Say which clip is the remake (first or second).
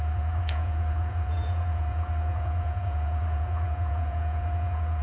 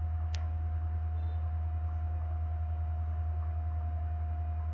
first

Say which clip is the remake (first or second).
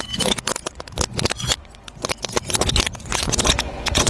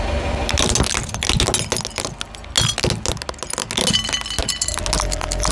first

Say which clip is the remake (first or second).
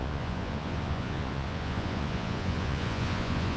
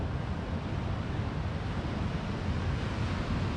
first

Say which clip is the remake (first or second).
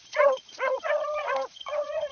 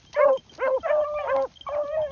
first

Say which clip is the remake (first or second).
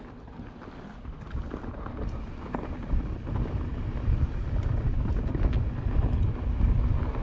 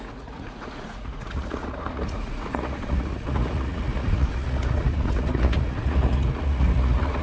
second